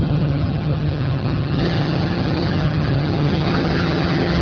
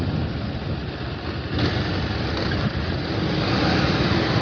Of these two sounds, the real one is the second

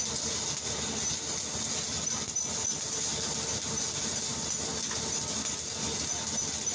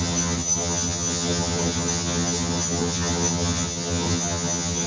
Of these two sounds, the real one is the first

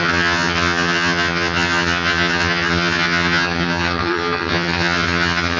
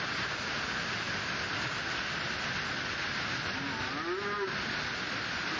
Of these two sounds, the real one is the second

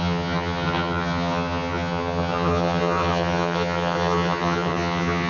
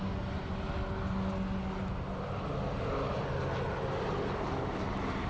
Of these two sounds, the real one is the second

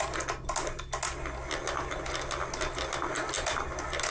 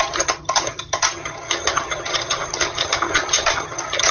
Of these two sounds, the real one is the first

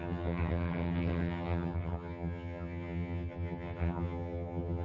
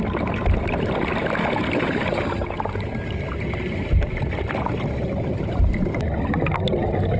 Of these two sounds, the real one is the second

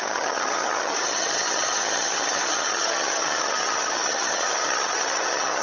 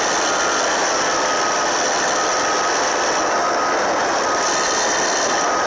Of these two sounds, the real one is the second